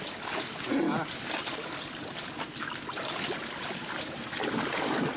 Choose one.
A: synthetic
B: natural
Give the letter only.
B